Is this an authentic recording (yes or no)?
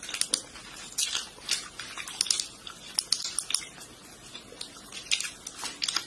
yes